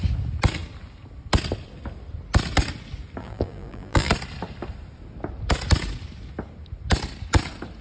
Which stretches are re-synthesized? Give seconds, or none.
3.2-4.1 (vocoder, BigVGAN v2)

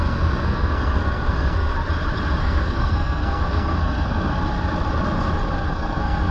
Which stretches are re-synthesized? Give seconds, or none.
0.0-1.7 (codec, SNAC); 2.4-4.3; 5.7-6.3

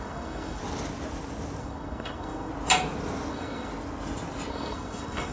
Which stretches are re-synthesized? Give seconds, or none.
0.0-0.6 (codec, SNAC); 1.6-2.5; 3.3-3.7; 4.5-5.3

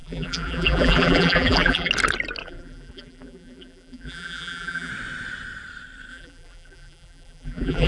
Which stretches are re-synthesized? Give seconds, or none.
0.0-1.9 (vocoder, BigVGAN v2); 2.4-4.9; 6.1-7.9

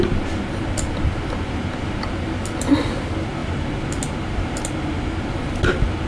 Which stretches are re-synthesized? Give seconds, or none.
none

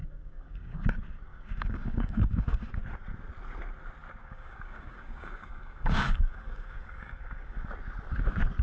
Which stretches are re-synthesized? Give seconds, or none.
0.0-0.8 (codec, DAC); 1.3-2.7; 4.2-7.7

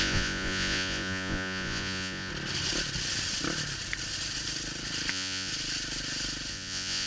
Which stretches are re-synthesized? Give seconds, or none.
0.0-2.3 (vocoder, Vocos); 5.1-5.5; 6.5-7.1